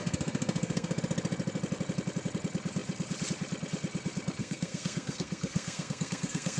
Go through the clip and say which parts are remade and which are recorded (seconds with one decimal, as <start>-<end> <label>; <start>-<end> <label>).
0.0-1.0 remade; 1.0-4.4 recorded; 4.4-6.6 remade